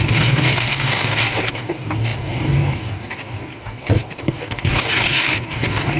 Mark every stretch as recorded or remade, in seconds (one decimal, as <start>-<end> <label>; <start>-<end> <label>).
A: 0.0-6.0 remade